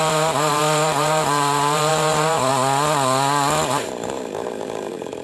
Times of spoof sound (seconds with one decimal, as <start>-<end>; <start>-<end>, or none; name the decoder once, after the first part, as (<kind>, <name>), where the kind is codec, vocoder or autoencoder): 0.0-2.5 (vocoder, BigVGAN v2); 3.8-5.2